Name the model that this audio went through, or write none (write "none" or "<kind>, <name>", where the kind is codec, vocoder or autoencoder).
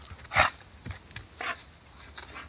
none